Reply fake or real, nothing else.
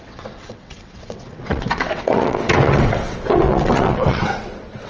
fake